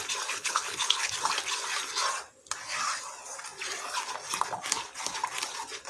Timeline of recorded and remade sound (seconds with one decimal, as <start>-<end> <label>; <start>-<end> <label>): 0.0-0.4 recorded; 0.4-1.1 remade; 1.1-5.9 recorded

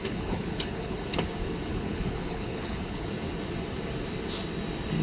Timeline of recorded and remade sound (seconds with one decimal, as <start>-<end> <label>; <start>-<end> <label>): 0.0-1.2 remade; 1.2-1.7 recorded; 1.7-3.1 remade; 3.1-5.0 recorded

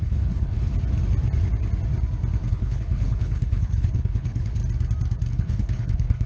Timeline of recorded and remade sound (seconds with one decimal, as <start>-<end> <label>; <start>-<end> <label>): 0.0-0.7 remade; 0.7-2.5 recorded; 2.5-4.6 remade; 4.6-5.3 recorded; 5.3-6.3 remade

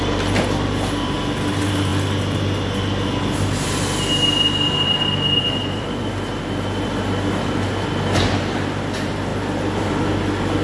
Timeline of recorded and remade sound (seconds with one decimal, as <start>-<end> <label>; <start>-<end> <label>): 0.0-10.6 recorded